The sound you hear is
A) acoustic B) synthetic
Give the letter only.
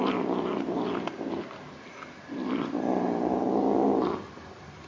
A